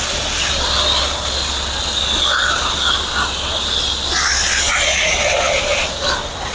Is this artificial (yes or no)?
no